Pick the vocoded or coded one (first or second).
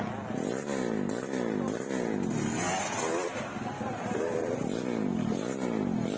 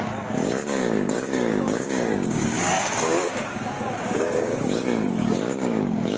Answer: second